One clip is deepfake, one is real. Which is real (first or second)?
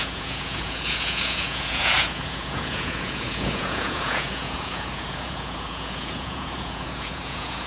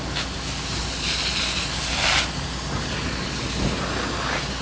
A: second